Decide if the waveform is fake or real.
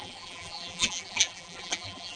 fake